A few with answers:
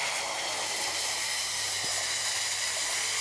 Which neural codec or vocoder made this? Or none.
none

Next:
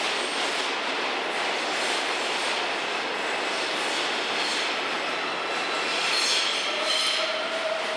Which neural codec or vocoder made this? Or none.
none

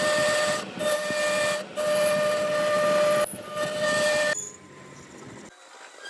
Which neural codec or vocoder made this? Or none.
none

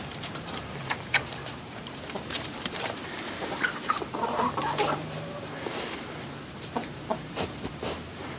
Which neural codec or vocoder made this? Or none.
vocoder, BigVGAN v2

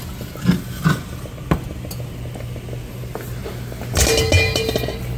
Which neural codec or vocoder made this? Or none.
none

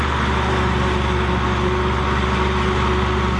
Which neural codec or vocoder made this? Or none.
none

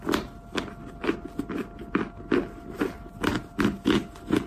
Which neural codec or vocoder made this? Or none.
none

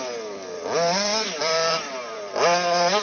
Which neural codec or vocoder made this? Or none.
vocoder, BigVGAN v2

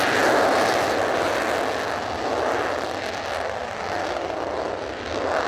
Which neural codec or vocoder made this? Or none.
none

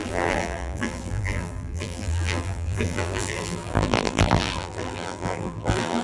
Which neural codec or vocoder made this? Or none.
vocoder, BigVGAN v2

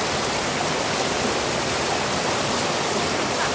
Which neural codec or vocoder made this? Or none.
none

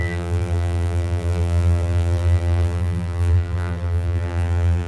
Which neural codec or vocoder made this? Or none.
vocoder, BigVGAN v2